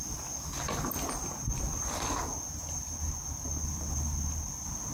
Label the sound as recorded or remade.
recorded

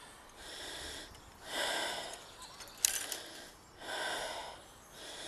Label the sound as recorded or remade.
recorded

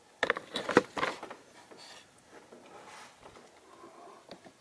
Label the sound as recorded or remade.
recorded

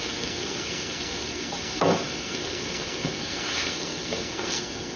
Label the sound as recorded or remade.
remade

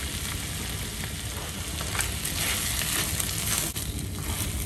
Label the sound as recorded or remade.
recorded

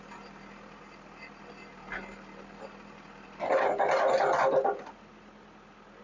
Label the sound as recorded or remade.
recorded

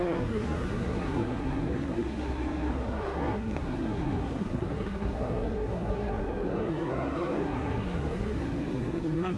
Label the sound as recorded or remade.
remade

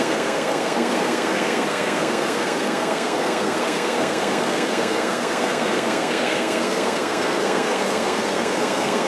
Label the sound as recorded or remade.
remade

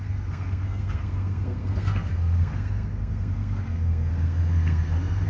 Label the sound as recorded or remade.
remade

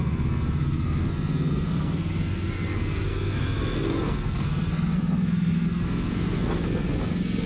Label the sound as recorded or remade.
remade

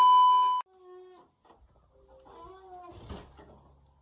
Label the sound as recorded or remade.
recorded